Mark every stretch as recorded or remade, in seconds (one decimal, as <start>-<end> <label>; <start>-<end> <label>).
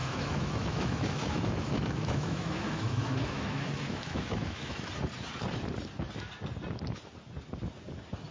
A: 0.0-4.9 remade; 4.9-8.3 recorded